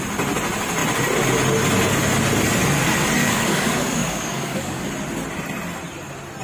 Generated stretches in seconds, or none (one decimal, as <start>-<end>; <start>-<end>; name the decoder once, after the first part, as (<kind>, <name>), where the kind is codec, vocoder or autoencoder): 3.2-4.9 (codec, DAC)